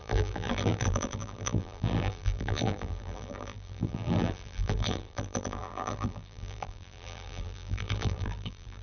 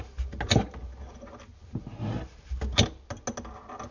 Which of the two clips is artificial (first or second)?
first